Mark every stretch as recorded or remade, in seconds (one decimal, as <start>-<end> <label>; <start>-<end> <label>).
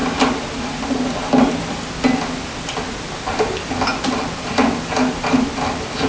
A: 0.0-6.1 recorded